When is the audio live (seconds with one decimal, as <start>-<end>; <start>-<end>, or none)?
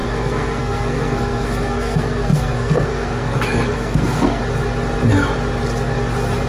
4.4-6.5